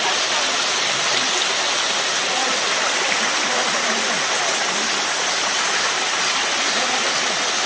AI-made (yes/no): no